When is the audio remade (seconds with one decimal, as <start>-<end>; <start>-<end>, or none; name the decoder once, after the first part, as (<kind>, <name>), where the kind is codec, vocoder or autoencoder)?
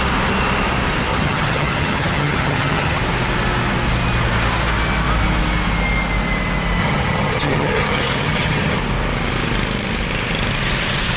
1.1-3.0 (vocoder, HiFi-GAN); 6.8-8.8